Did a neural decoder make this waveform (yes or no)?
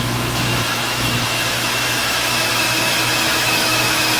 yes